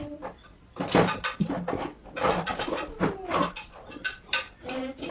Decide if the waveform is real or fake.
real